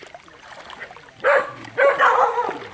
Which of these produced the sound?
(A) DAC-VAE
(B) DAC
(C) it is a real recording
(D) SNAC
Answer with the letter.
C